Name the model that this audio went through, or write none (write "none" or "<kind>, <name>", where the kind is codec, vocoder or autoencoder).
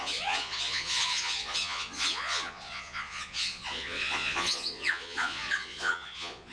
vocoder, Vocos